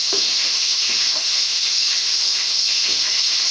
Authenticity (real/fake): fake